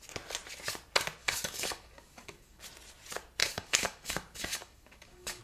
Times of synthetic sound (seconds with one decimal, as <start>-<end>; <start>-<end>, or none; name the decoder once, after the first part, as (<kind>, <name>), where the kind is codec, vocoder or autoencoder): 1.2-2.6 (codec, DAC); 3.4-5.4